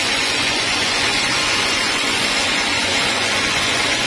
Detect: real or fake fake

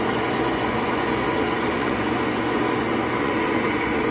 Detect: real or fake fake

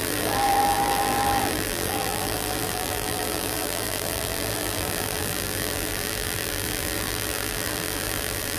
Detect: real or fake fake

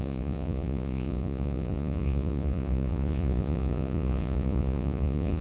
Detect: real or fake fake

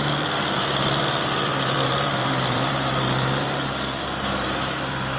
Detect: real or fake fake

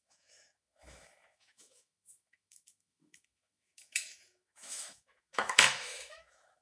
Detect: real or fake fake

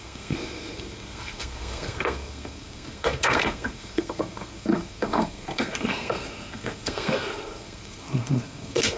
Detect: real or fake fake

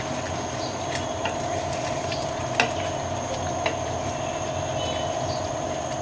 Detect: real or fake real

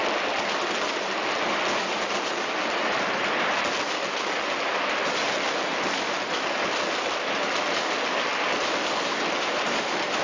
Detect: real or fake real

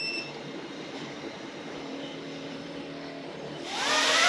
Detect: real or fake fake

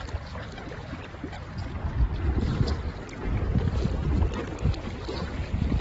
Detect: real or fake real